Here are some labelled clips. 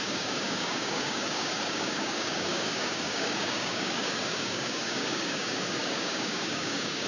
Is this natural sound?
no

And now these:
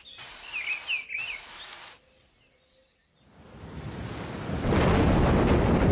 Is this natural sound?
yes